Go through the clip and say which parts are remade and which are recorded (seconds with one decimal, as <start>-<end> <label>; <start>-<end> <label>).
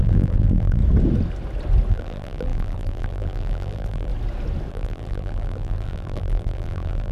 0.0-0.8 remade; 0.8-1.9 recorded; 1.9-4.1 remade; 4.1-4.7 recorded; 4.7-7.1 remade